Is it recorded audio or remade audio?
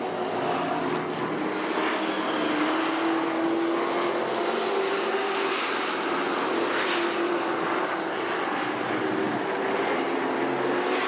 recorded